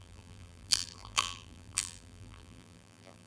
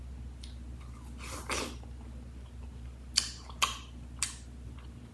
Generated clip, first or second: first